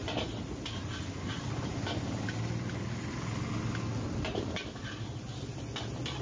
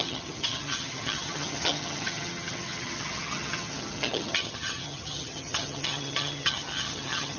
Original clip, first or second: first